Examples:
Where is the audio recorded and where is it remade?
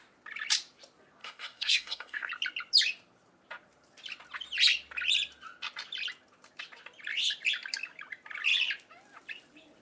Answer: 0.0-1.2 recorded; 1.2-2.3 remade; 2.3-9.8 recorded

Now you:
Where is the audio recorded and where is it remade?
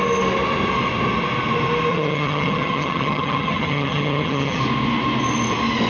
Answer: 0.0-1.9 recorded; 1.9-4.6 remade; 4.6-5.9 recorded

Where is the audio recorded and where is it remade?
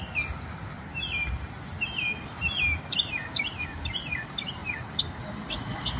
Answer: 0.0-6.0 recorded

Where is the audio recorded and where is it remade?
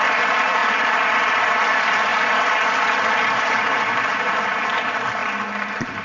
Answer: 0.0-0.6 recorded; 0.6-1.4 remade; 1.4-6.0 recorded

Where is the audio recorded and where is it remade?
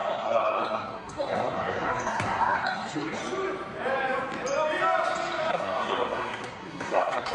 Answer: 0.0-3.2 remade; 3.2-5.5 recorded; 5.5-7.3 remade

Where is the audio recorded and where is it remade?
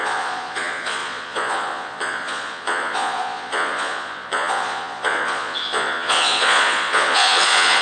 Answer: 0.0-7.8 remade